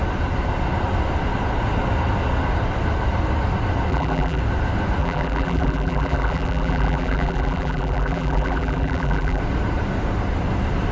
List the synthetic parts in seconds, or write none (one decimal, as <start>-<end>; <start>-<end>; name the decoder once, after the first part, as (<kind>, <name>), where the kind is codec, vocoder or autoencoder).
3.9-4.4 (vocoder, BigVGAN v2); 5.0-9.4